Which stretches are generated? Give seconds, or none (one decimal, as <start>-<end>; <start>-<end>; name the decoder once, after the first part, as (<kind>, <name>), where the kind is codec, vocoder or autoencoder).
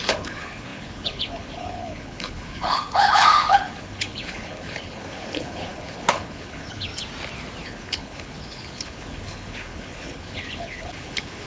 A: 0.0-6.9 (codec, HILCodec); 7.6-11.5